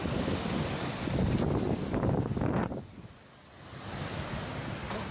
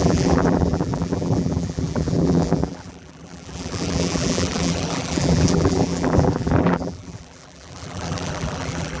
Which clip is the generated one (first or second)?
second